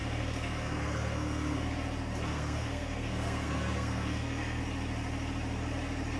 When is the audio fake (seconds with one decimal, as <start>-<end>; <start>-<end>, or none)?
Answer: 0.0-1.7; 2.3-4.6